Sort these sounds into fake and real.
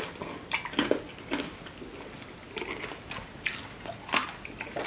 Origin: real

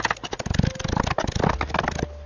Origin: real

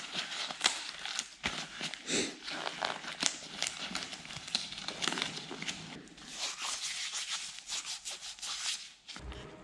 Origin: real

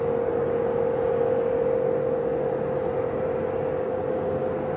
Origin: real